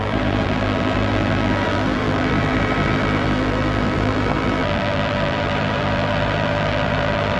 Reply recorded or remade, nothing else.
remade